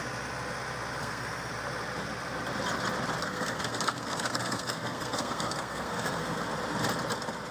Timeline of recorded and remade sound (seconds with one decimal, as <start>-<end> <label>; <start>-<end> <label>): 0.0-1.0 recorded; 1.0-1.5 remade; 1.5-3.2 recorded; 3.2-6.4 remade; 6.4-7.5 recorded